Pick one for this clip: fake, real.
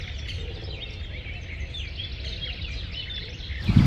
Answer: real